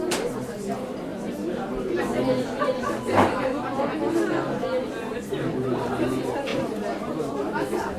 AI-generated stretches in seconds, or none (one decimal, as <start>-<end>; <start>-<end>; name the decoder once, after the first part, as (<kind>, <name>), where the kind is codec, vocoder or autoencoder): none